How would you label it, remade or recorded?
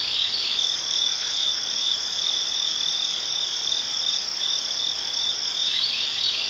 remade